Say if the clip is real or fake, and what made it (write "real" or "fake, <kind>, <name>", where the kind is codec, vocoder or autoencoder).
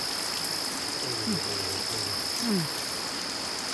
real